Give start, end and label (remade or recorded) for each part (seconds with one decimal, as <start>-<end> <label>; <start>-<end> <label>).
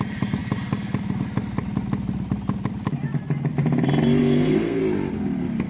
0.0-4.2 recorded; 4.2-4.8 remade; 4.8-5.7 recorded